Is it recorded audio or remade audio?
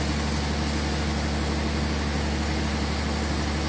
recorded